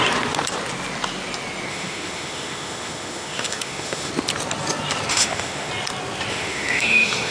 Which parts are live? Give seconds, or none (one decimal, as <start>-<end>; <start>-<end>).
0.0-1.7; 4.1-5.1; 5.7-6.3